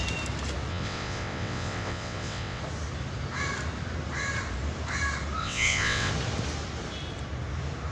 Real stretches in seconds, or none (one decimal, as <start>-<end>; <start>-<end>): 0.0-0.7; 2.6-5.4; 6.1-7.9